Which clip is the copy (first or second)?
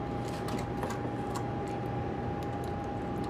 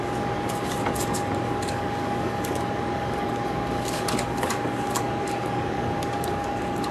second